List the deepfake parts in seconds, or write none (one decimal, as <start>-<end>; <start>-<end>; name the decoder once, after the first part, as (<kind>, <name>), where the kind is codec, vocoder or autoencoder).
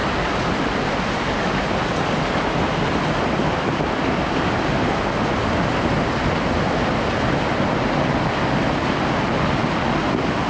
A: none